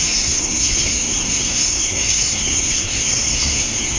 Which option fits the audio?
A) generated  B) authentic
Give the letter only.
A